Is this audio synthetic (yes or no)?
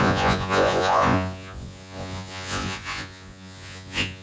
yes